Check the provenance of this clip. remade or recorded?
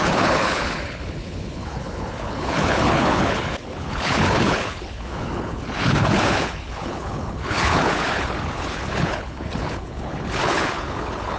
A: remade